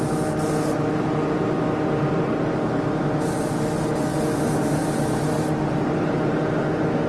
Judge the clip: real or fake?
real